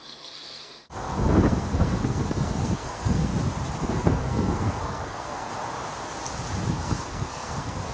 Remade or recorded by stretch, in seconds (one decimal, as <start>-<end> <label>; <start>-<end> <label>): 0.0-3.3 remade; 3.3-3.8 recorded; 3.8-5.5 remade; 5.5-6.7 recorded; 6.7-7.9 remade